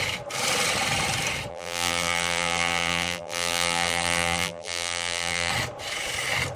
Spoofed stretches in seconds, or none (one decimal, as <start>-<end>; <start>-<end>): 1.5-5.5